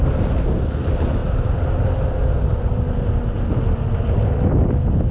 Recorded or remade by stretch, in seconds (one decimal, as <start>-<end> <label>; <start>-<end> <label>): 0.0-5.1 recorded